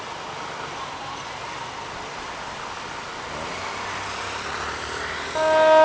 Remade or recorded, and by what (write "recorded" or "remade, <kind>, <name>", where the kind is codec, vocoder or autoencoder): recorded